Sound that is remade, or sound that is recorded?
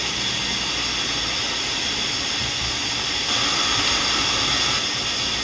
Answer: recorded